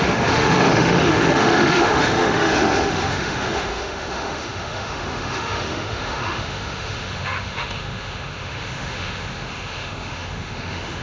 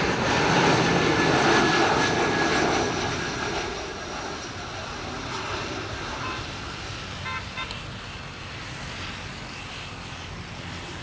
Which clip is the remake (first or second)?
first